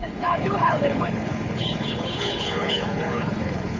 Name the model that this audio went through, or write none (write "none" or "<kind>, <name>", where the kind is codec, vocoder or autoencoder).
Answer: codec, HILCodec